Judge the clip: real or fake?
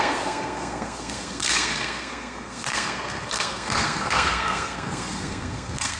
fake